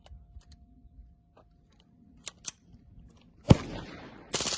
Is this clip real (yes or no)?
yes